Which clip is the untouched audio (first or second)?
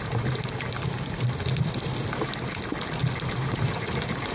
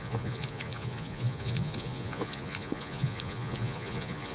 first